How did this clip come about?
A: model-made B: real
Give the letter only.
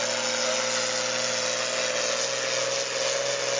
B